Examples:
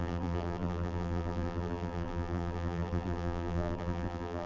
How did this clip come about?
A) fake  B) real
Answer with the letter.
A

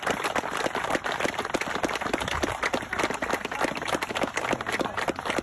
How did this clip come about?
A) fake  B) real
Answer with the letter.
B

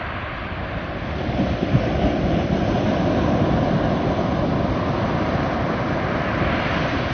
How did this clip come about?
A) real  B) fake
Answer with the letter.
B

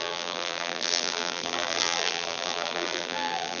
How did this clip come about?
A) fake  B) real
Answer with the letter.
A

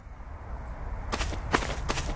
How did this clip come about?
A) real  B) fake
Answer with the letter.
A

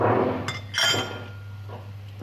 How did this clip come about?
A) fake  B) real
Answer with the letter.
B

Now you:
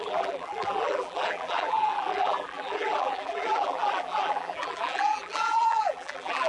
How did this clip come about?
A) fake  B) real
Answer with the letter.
A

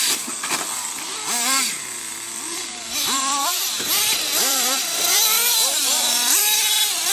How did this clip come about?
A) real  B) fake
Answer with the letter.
B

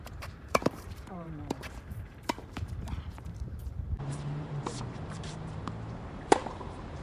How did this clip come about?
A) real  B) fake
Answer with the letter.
B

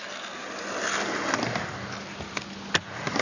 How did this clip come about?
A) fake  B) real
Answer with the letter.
B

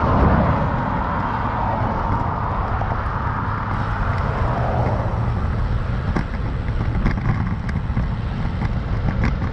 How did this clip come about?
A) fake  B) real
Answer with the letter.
B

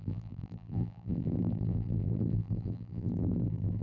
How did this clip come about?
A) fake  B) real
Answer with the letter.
A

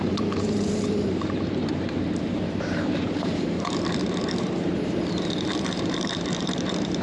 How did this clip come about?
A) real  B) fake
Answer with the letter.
B